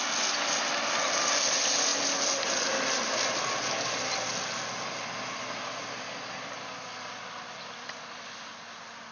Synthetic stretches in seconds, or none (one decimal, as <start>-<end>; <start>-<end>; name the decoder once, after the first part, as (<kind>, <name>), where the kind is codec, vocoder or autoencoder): none